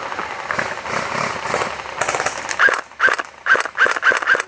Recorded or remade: recorded